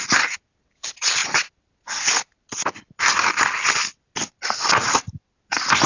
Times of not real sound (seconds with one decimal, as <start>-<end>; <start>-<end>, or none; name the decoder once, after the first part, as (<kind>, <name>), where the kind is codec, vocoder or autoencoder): none